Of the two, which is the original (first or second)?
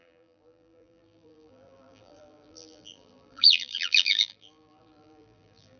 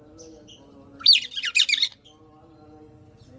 second